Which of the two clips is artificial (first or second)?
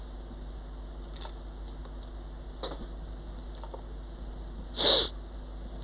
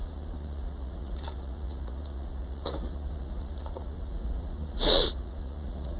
second